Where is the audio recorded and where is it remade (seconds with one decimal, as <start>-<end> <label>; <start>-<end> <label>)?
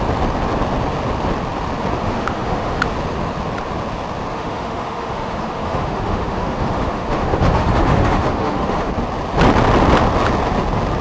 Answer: 0.0-2.0 recorded; 2.0-2.8 remade; 2.8-4.3 recorded; 4.3-8.9 remade; 8.9-11.0 recorded